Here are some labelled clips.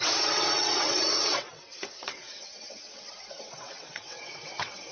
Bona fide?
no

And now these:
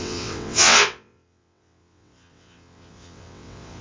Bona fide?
no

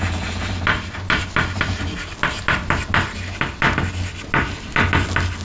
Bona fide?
yes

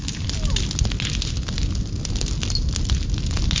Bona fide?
yes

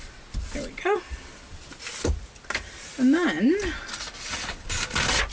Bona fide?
yes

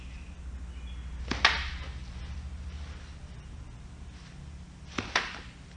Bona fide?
yes